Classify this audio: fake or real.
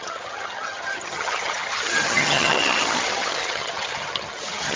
fake